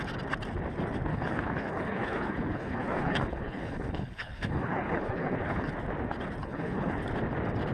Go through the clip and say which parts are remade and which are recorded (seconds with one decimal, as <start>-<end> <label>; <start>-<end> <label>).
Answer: 0.0-1.1 recorded; 1.1-5.7 remade; 5.7-6.4 recorded; 6.4-7.0 remade; 7.0-7.7 recorded